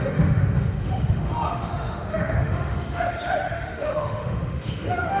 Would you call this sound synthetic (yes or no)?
yes